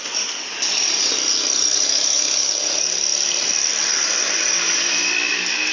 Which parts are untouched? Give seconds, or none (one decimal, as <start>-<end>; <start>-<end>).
0.0-5.7